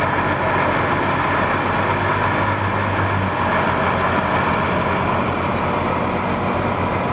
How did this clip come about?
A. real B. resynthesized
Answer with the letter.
A